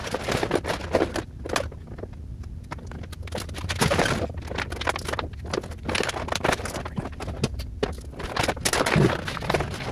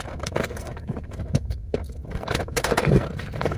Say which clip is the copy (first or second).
second